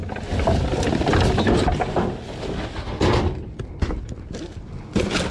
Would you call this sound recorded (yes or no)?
yes